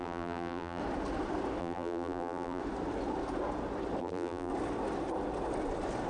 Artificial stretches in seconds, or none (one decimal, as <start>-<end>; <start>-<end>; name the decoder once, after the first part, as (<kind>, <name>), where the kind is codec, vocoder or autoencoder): 0.0-0.8 (vocoder, BigVGAN v2); 1.6-2.6; 4.0-4.5